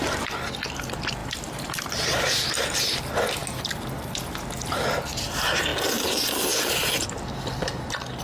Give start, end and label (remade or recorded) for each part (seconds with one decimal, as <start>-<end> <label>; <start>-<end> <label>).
0.0-8.2 recorded